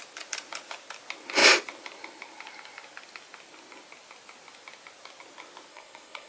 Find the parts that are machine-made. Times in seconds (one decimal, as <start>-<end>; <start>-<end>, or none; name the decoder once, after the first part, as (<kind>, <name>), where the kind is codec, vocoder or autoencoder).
5.7-6.3 (codec, HILCodec)